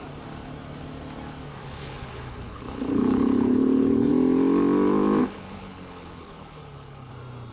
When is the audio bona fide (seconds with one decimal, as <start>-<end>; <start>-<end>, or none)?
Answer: 0.0-1.6; 4.1-5.2; 7.1-7.5